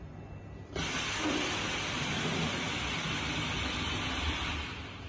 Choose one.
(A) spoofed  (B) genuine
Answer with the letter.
B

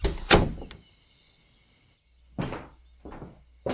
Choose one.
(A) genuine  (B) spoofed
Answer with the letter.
A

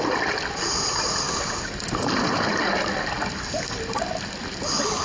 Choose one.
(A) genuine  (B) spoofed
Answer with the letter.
A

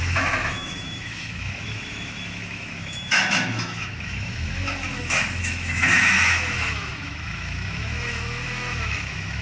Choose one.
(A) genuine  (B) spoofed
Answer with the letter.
B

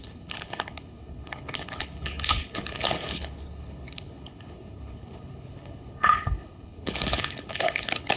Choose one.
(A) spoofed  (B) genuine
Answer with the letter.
A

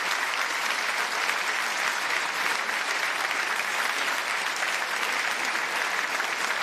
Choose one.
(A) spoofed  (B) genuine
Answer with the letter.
A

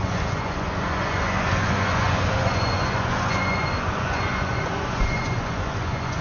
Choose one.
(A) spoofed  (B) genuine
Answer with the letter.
A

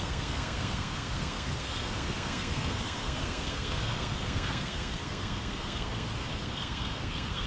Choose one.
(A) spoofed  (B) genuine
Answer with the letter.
A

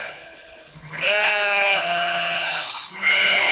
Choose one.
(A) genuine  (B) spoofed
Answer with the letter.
B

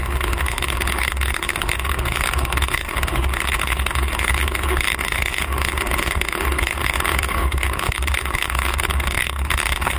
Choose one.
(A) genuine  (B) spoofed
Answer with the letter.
B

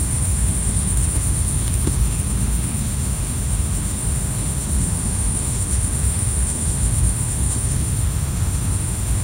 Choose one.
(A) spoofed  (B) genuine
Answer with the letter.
A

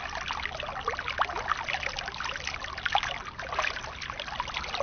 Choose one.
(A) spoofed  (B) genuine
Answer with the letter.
B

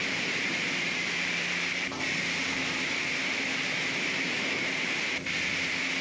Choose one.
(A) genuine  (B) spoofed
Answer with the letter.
B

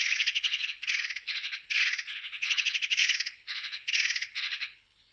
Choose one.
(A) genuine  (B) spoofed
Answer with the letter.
B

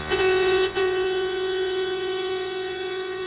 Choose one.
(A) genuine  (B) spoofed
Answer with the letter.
B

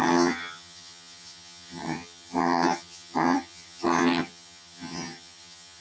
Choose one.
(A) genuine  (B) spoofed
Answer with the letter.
B